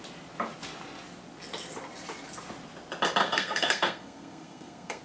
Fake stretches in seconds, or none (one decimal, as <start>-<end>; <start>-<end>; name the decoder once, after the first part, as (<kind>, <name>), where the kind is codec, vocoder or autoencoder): 3.2-5.0 (codec, SNAC)